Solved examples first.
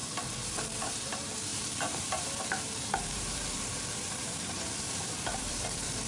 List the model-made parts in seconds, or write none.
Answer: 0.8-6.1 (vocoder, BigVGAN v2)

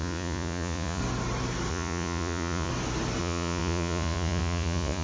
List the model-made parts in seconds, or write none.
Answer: 0.0-1.0 (vocoder, Vocos); 1.7-2.7; 3.2-5.0